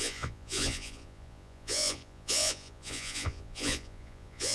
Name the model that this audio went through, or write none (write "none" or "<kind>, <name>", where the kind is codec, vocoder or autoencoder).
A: vocoder, Vocos